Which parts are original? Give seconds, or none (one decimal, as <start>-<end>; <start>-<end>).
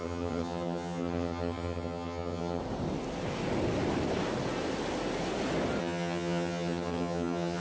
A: 2.6-5.8